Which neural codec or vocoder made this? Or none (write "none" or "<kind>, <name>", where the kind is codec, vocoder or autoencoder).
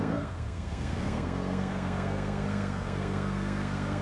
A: codec, SNAC